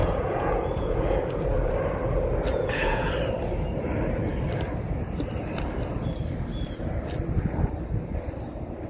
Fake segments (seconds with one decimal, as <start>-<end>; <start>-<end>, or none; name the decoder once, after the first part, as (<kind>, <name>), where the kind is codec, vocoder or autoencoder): 0.0-1.7 (vocoder, Vocos); 2.5-3.1